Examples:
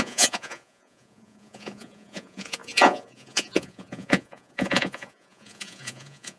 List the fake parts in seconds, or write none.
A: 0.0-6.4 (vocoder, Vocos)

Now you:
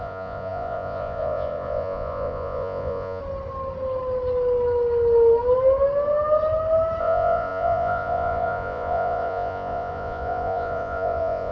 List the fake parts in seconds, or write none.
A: 0.0-3.2 (vocoder, Vocos); 7.0-11.5

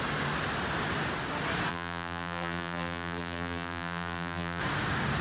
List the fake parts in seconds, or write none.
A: 1.7-4.6 (vocoder, BigVGAN v2)

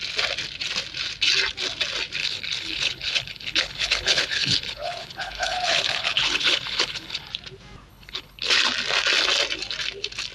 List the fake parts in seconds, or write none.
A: 2.2-7.3 (codec, HILCodec); 7.9-8.6

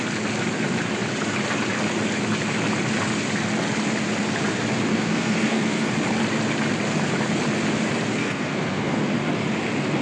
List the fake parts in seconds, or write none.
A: 4.9-5.9 (codec, SNAC); 8.2-9.0

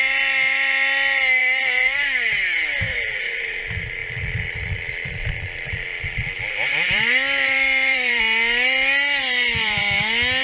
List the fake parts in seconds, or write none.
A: 1.4-3.6 (vocoder, BigVGAN v2); 4.0-8.2; 9.2-9.8

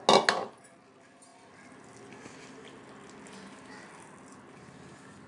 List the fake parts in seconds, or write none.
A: none